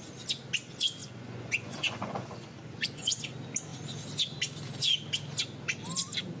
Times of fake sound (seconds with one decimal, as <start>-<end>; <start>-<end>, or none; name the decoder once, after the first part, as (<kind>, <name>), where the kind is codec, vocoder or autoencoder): 1.0-3.2 (vocoder, Vocos)